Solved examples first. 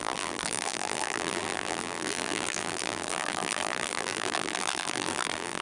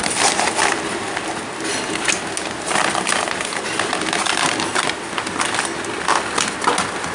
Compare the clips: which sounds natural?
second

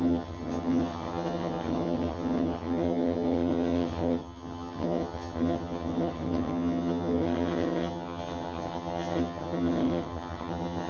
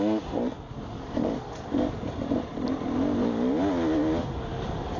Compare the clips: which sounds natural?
second